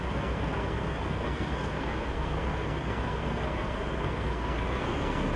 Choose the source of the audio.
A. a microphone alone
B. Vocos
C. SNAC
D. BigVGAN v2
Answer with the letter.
C